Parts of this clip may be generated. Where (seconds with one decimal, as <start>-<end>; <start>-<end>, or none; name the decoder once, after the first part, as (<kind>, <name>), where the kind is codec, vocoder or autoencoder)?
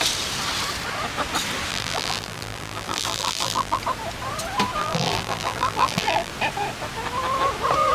1.7-3.8 (vocoder, BigVGAN v2); 4.8-6.3